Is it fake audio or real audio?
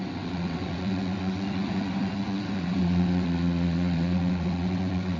fake